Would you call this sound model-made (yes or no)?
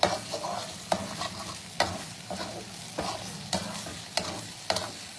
no